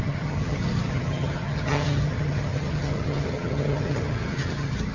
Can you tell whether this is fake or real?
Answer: fake